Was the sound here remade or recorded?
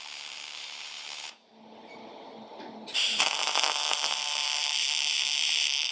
remade